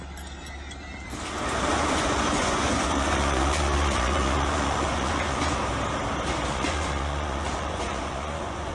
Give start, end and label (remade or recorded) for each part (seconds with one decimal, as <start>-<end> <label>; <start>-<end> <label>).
0.0-1.7 recorded; 1.7-5.6 remade; 5.6-6.5 recorded; 6.5-8.7 remade